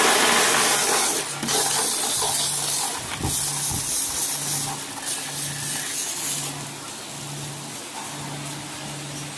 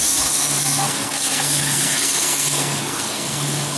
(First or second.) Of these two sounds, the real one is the first